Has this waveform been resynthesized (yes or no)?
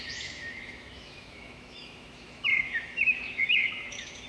yes